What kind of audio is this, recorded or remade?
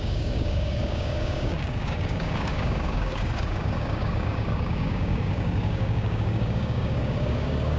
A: remade